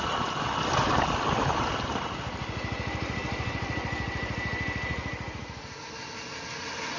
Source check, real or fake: real